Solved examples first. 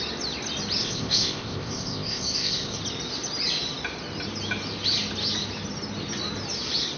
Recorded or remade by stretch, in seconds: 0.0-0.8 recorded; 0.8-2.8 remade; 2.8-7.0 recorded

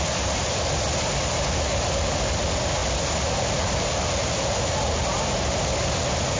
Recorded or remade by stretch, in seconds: 0.0-6.4 recorded

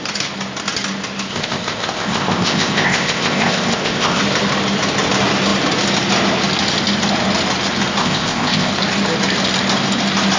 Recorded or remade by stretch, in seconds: 0.0-1.3 recorded; 1.3-4.2 remade; 4.2-8.0 recorded; 8.0-8.7 remade; 8.7-10.4 recorded

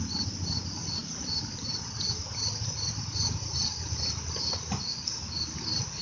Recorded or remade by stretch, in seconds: 0.0-6.0 recorded